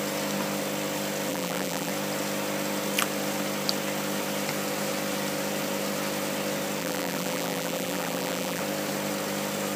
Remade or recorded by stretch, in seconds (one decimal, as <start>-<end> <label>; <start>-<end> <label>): 0.0-1.3 recorded; 1.3-1.9 remade; 1.9-6.8 recorded; 6.8-8.6 remade; 8.6-9.8 recorded